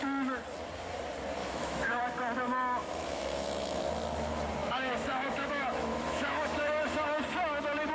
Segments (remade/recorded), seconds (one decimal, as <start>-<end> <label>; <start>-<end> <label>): 0.0-1.4 recorded; 1.4-2.0 remade; 2.0-2.5 recorded; 2.5-3.8 remade; 3.8-4.6 recorded; 4.6-7.2 remade; 7.2-7.9 recorded